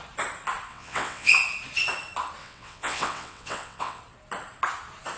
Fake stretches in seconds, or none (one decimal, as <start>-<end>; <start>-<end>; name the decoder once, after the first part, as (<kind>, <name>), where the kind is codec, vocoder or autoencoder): 0.7-1.3 (vocoder, WaveNeXt); 2.4-4.0

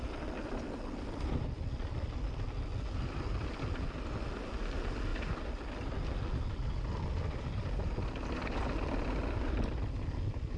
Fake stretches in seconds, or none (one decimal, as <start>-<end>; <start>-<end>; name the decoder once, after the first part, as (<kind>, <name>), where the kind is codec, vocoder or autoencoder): none

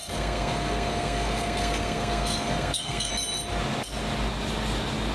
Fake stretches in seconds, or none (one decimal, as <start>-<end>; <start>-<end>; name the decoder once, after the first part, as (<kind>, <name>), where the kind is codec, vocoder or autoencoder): 0.0-3.1 (codec, SNAC)

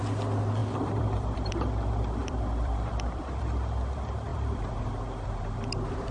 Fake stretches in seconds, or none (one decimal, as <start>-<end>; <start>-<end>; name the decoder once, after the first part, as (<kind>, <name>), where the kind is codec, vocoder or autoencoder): 0.6-1.5 (vocoder, BigVGAN v2); 2.2-3.5; 4.3-6.1

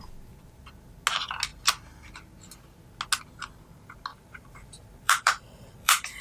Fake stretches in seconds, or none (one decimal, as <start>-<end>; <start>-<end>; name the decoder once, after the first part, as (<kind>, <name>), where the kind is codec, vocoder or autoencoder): 4.1-6.2 (vocoder, BigVGAN v2)

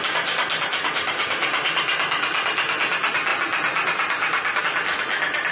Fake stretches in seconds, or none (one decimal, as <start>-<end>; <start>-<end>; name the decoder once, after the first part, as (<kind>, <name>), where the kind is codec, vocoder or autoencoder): none

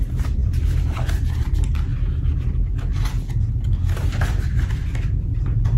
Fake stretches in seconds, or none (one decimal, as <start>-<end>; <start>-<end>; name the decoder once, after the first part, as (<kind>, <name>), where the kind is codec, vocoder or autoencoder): 0.0-1.9 (vocoder, BigVGAN v2); 4.2-5.8